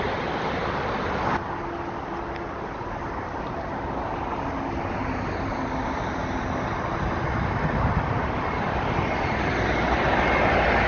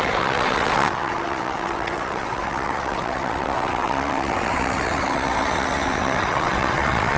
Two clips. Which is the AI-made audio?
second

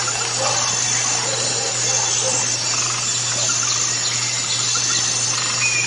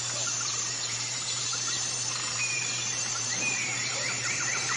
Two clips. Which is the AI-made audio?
second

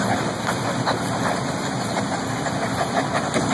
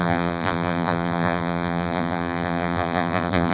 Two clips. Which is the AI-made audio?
second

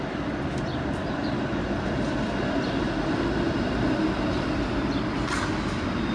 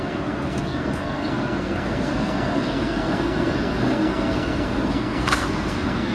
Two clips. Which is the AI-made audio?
second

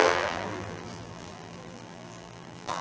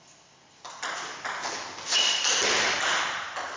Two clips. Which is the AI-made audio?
first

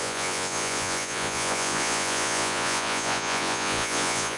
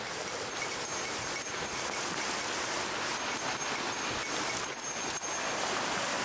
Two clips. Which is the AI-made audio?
first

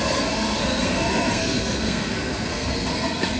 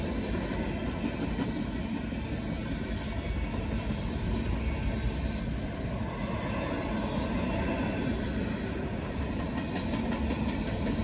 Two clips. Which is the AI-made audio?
first